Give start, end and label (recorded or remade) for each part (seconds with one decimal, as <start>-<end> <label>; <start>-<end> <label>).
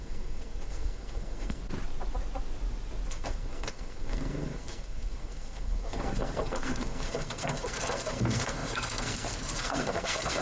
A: 0.0-1.6 remade; 1.6-3.1 recorded; 3.1-10.4 remade